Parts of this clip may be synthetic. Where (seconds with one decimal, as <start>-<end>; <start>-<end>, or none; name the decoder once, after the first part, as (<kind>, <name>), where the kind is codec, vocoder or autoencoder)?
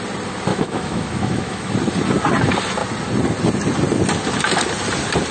0.5-1.7 (autoencoder, DAC-VAE)